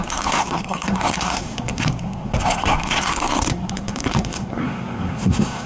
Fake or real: fake